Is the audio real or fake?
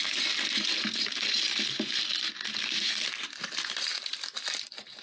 real